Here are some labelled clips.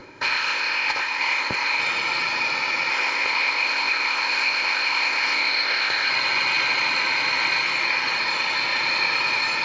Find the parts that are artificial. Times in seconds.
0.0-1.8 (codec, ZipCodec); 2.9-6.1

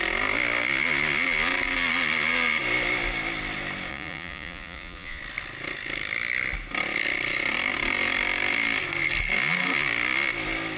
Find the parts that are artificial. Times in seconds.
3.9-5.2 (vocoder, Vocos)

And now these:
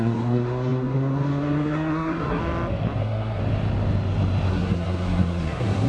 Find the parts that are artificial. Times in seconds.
0.0-2.4 (codec, SNAC); 3.0-3.4; 4.5-5.9

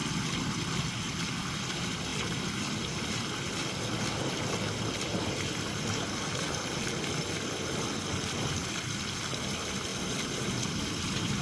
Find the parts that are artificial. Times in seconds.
1.6-2.1 (vocoder, BigVGAN v2); 5.1-8.6; 9.4-9.9; 10.6-11.4

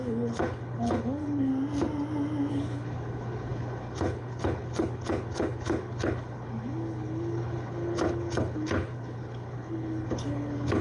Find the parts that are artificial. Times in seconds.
0.0-1.5 (codec, HILCodec); 2.5-10.8

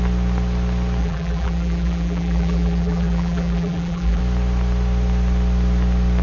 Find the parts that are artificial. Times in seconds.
1.0-4.2 (vocoder, BigVGAN v2)

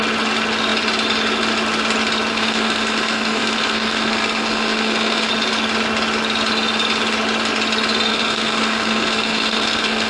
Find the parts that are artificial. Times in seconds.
2.3-5.3 (codec, SNAC); 8.1-10.1

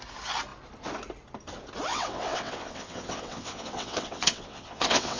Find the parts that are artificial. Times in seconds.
1.9-5.2 (vocoder, WaveNeXt)